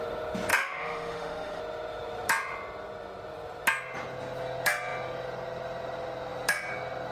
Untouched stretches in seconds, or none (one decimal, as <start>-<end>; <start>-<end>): 0.0-0.5; 1.6-7.1